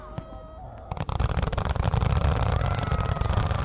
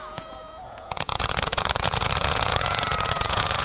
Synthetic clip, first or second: second